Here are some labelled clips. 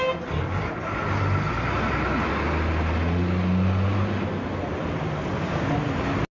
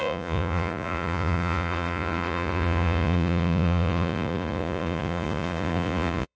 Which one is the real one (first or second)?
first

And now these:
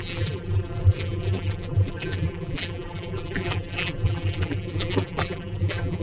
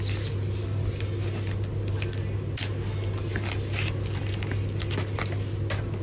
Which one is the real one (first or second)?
second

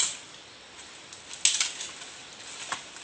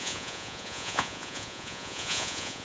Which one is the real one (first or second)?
first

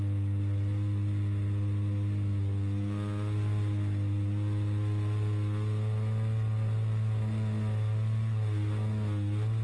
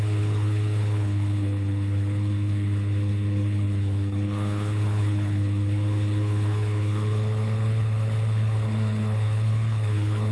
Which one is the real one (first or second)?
first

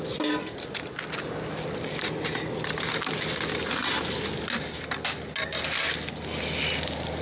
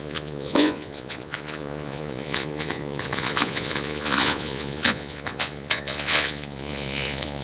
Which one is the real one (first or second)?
first